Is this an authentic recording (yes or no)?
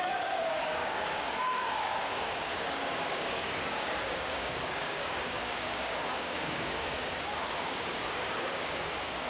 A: no